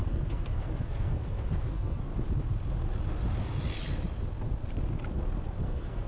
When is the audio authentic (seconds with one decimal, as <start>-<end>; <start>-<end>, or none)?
2.1-5.6